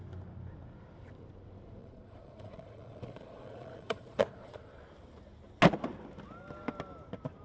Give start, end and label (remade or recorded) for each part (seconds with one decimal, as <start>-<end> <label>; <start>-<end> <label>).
0.0-1.8 recorded; 1.8-4.8 remade; 4.8-7.4 recorded